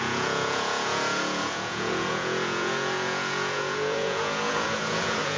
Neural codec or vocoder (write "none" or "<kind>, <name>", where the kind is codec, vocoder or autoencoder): vocoder, Vocos